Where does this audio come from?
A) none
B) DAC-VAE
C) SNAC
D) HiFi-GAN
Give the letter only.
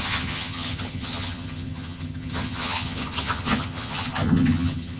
D